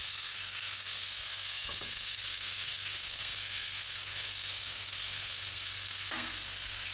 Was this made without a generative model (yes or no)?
no